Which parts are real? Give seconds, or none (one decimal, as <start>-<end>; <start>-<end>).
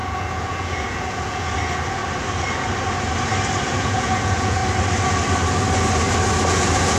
2.0-3.7; 4.6-6.5